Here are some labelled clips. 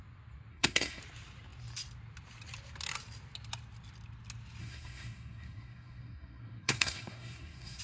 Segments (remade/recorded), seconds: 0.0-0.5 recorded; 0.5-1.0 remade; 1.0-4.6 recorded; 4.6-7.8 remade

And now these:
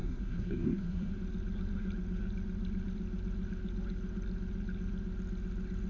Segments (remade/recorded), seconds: 0.0-1.1 remade; 1.1-5.9 recorded

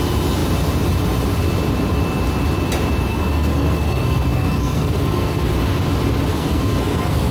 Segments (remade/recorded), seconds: 0.0-3.1 recorded; 3.1-5.5 remade; 5.5-6.3 recorded; 6.3-7.3 remade